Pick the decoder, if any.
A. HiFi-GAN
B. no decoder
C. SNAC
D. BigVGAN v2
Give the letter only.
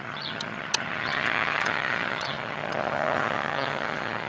A